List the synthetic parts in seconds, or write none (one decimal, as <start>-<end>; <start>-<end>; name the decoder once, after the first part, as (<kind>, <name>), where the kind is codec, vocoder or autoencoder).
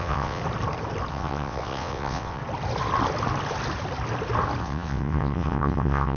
0.0-0.4 (vocoder, WaveNeXt); 1.1-2.4; 4.6-6.2